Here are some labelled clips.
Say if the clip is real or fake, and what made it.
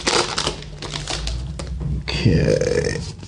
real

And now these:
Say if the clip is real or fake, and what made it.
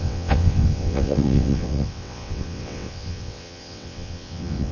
fake, vocoder, WaveNeXt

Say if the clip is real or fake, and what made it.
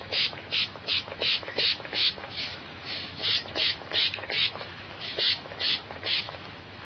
fake, autoencoder, DAC-VAE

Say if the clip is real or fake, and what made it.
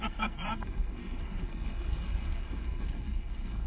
fake, codec, SNAC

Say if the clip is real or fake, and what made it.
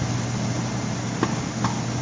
real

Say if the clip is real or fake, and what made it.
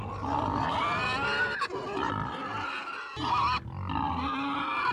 real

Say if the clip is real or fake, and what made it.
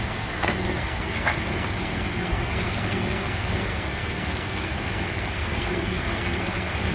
fake, codec, SNAC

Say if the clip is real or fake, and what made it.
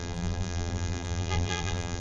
fake, vocoder, BigVGAN v2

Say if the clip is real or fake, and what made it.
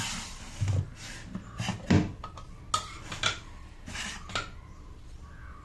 real